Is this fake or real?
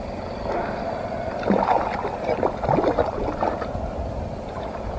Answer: real